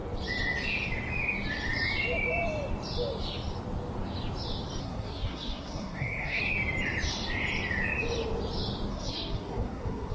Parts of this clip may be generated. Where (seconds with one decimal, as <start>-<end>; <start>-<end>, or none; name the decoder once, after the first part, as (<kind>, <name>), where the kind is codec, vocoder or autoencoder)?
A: 4.8-6.4 (codec, SNAC); 8.9-10.1